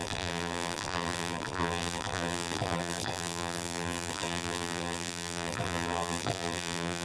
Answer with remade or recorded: remade